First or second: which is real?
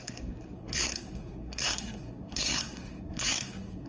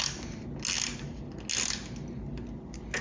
second